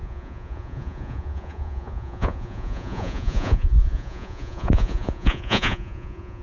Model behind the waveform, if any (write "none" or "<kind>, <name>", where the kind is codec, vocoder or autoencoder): vocoder, Vocos